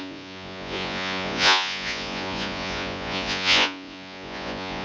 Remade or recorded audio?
remade